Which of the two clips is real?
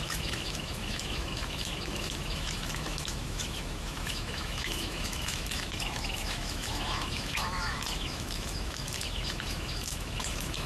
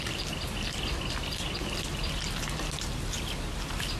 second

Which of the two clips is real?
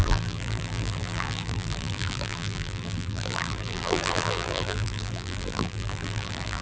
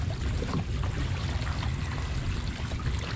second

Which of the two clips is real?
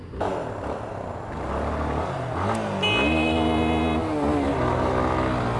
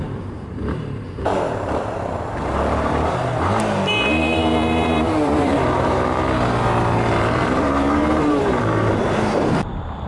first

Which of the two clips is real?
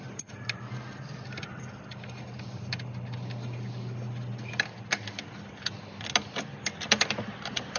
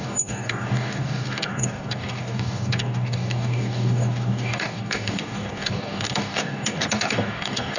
first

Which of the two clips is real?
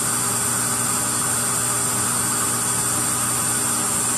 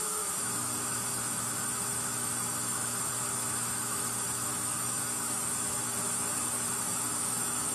first